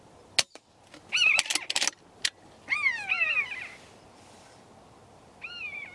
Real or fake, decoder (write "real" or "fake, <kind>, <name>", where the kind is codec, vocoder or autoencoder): real